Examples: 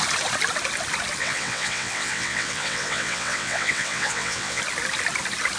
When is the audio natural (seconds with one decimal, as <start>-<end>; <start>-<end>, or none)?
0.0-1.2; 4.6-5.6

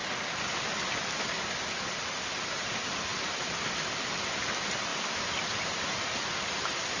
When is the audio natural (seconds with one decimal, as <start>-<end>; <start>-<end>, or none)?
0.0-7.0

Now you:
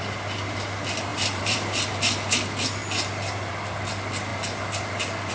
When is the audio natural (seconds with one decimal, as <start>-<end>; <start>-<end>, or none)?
0.0-1.1; 1.8-5.3